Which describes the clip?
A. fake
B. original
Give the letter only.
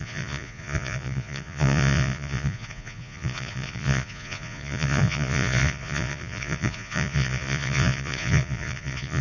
A